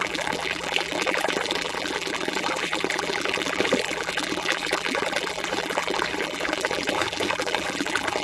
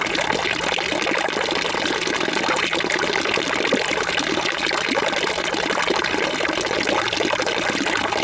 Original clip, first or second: second